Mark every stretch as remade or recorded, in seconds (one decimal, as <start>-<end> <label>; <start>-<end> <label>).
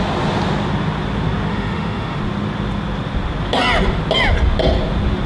0.0-1.5 recorded; 1.5-2.2 remade; 2.2-5.3 recorded